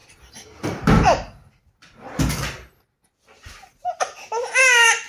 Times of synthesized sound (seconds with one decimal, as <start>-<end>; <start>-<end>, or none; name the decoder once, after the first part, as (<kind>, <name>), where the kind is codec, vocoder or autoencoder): none